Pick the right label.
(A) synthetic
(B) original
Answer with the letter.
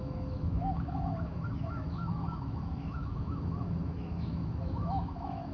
A